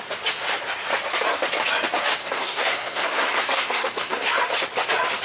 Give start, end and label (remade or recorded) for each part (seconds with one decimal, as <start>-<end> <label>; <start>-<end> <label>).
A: 0.0-2.2 recorded; 2.2-4.3 remade; 4.3-5.2 recorded